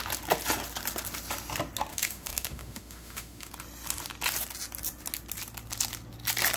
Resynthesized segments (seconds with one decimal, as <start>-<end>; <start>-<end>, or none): 1.9-3.5